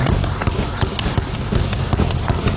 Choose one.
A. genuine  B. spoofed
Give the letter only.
A